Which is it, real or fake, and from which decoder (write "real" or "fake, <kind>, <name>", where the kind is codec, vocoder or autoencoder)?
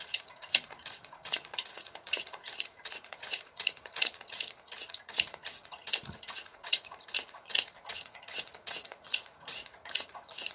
fake, vocoder, Vocos